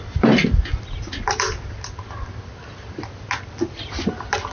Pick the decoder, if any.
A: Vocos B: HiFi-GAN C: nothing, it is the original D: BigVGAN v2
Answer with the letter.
C